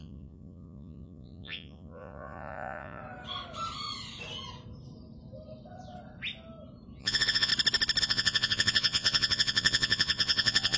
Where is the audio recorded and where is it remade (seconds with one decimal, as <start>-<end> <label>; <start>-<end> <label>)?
0.0-3.0 remade; 3.0-7.0 recorded; 7.0-7.5 remade; 7.5-8.0 recorded; 8.0-10.8 remade